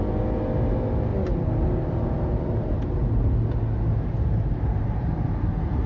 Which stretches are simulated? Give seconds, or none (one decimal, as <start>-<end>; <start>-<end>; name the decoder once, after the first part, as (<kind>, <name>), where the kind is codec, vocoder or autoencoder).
none